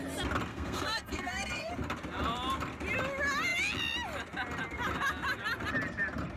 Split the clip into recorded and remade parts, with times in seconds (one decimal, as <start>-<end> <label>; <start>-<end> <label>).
0.0-0.5 recorded; 0.5-1.7 remade; 1.7-6.4 recorded